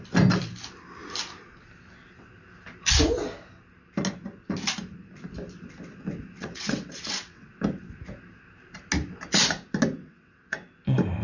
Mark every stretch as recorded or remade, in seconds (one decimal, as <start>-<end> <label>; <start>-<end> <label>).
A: 0.0-6.4 recorded; 6.4-7.5 remade; 7.5-10.0 recorded; 10.0-10.7 remade; 10.7-11.2 recorded